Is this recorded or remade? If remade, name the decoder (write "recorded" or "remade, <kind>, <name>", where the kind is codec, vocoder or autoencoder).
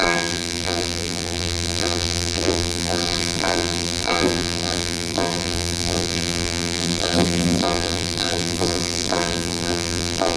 remade, vocoder, BigVGAN v2